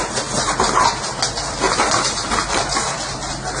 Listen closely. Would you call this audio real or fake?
real